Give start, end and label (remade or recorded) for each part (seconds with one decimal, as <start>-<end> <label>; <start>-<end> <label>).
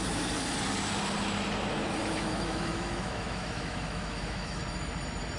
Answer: 0.0-2.0 recorded; 2.0-4.6 remade; 4.6-5.4 recorded